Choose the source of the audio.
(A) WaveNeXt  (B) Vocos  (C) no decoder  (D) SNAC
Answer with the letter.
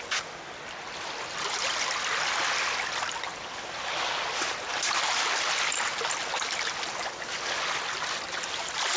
C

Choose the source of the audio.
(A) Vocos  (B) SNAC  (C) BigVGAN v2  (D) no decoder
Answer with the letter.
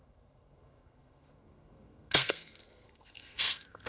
B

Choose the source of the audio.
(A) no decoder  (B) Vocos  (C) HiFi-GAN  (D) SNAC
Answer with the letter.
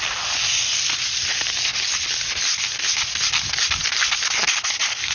A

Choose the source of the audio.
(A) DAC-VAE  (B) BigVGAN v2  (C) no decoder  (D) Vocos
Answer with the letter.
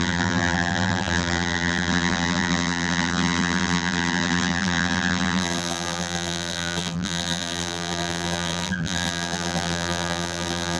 B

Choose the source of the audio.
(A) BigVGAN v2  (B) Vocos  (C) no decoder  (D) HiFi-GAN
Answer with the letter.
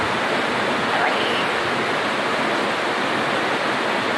C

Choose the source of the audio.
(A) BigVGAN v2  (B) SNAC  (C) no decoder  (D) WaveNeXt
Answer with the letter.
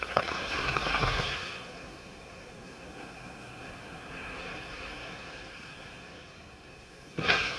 B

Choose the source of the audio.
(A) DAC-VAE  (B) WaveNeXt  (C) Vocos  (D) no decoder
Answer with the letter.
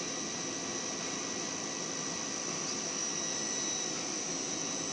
D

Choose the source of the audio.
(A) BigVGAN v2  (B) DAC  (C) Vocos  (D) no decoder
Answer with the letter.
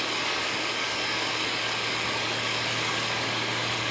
B